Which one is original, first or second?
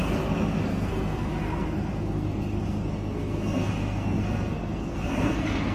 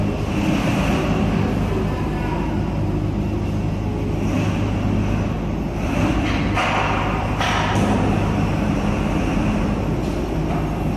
second